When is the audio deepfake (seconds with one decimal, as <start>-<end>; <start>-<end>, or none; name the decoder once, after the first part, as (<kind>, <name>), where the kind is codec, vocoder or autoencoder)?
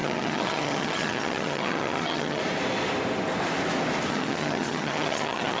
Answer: 0.0-2.4 (vocoder, HiFi-GAN); 4.1-5.6